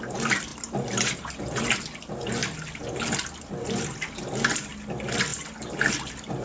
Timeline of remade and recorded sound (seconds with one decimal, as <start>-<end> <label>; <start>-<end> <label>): 0.0-6.4 recorded